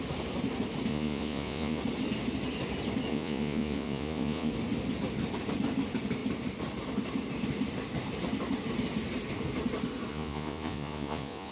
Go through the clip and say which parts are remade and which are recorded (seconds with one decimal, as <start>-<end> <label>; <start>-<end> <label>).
0.0-0.9 recorded; 0.9-1.8 remade; 1.8-3.1 recorded; 3.1-4.5 remade; 4.5-10.1 recorded; 10.1-11.5 remade